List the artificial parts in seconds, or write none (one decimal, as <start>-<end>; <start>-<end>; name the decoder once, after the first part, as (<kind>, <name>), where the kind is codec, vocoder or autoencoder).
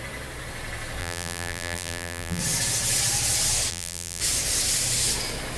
1.0-2.4 (vocoder, BigVGAN v2); 3.7-4.2